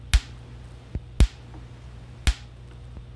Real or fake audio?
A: real